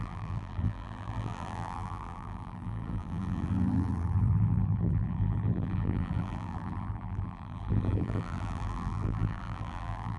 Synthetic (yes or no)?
yes